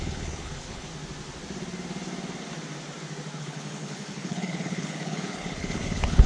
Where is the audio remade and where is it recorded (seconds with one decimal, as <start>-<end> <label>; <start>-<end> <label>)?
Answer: 0.0-0.9 remade; 0.9-3.4 recorded; 3.4-6.3 remade